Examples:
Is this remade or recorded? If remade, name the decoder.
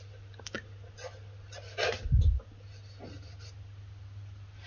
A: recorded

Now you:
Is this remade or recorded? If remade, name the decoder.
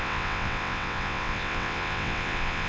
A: remade, vocoder, WaveNeXt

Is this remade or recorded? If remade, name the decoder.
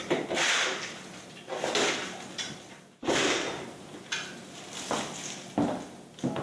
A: recorded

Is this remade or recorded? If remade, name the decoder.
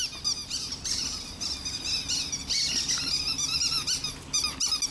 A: recorded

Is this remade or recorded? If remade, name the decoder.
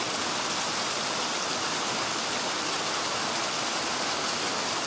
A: recorded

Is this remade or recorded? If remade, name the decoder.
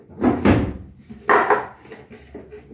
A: recorded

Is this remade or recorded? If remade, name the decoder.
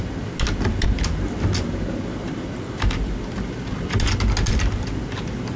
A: recorded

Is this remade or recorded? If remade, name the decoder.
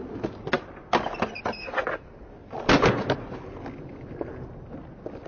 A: recorded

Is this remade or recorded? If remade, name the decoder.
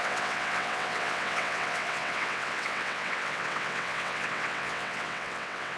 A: remade, vocoder, WaveNeXt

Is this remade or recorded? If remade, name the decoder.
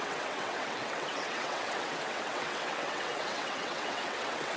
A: remade, vocoder, WaveNeXt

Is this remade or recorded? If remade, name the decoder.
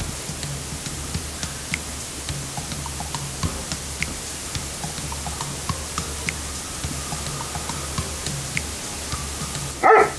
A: recorded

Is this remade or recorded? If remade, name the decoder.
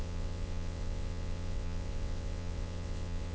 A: remade, vocoder, WaveNeXt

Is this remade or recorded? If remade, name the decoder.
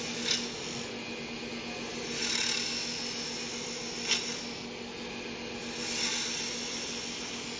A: recorded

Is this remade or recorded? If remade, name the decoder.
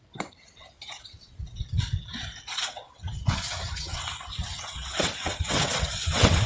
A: remade, vocoder, WaveNeXt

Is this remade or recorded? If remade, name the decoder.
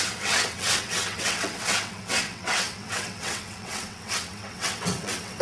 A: remade, vocoder, WaveNeXt